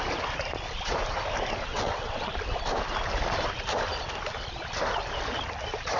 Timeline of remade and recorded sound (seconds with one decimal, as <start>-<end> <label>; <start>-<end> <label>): 0.0-1.7 recorded; 1.7-2.3 remade; 2.3-6.0 recorded